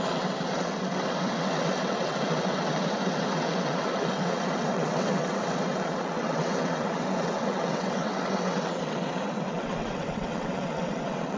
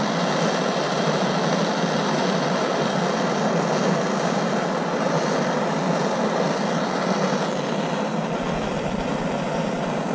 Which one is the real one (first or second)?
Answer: second